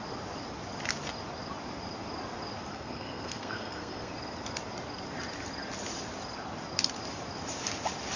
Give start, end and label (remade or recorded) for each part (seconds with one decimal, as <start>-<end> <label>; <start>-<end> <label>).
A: 0.0-2.7 recorded; 2.7-4.1 remade; 4.1-8.2 recorded